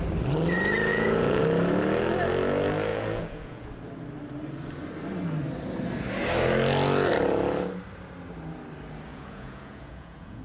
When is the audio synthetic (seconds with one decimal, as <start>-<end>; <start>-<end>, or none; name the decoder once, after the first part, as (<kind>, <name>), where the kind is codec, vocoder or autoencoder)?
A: 0.9-1.4 (vocoder, Vocos); 2.9-3.7; 9.1-10.4